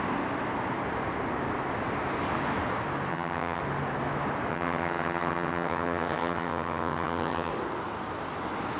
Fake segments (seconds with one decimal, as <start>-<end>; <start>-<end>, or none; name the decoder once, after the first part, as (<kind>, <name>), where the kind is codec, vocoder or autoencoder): 3.1-3.6 (vocoder, HiFi-GAN); 4.5-7.5